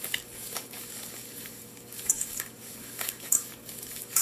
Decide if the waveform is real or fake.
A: fake